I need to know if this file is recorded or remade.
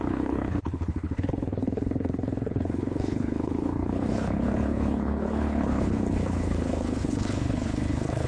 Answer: remade